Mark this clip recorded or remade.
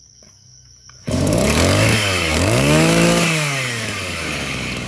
remade